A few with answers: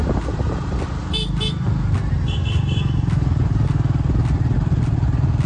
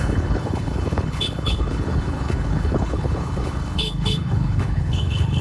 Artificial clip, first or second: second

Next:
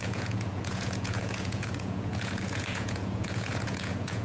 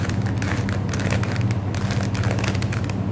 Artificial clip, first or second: first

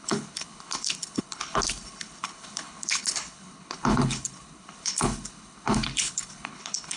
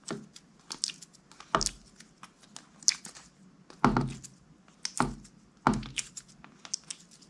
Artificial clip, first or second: first